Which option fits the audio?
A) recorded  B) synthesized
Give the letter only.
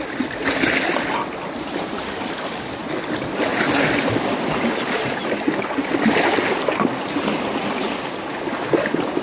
A